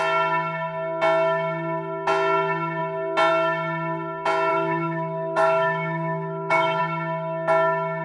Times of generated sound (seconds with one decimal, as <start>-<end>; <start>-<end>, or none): 4.5-6.8